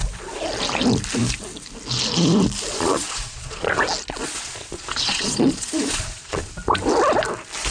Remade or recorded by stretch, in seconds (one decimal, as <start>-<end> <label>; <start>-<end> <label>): 0.0-2.7 recorded; 2.7-3.7 remade; 3.7-4.2 recorded; 4.2-6.5 remade; 6.5-7.7 recorded

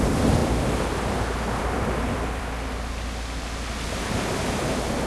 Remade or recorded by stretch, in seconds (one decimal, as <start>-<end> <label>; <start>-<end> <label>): 0.0-0.4 recorded; 0.4-2.4 remade; 2.4-5.1 recorded

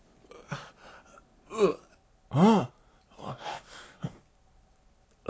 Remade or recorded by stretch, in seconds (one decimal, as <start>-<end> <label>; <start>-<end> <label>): 0.0-3.3 recorded; 3.3-4.2 remade; 4.2-5.3 recorded

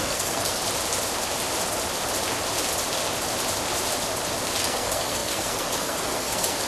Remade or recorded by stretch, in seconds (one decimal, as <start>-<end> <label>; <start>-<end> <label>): 0.0-0.6 remade; 0.6-4.6 recorded; 4.6-6.7 remade

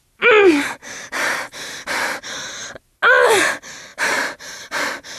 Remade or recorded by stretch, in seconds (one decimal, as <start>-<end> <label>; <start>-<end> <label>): 0.0-0.8 recorded; 0.8-1.7 remade; 1.7-3.9 recorded; 3.9-4.8 remade; 4.8-5.2 recorded

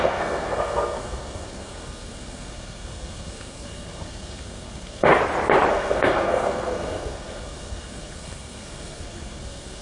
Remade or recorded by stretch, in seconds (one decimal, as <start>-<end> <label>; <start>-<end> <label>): 0.0-5.1 remade; 5.1-5.7 recorded; 5.7-9.8 remade